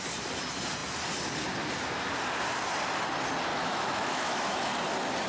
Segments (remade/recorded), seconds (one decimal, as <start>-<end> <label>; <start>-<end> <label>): 0.0-3.5 recorded; 3.5-4.7 remade; 4.7-5.3 recorded